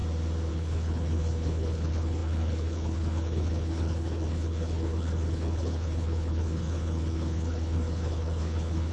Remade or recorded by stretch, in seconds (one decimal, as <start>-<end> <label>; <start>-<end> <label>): 0.0-0.5 recorded; 0.5-8.9 remade